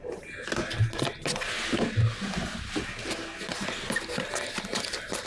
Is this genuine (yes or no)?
yes